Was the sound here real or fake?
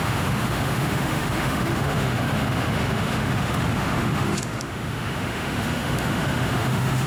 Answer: fake